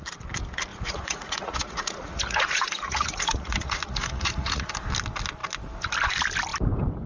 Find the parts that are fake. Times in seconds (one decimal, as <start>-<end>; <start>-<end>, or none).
0.7-4.7